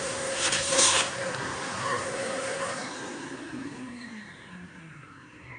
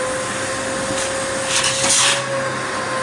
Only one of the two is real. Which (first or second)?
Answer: second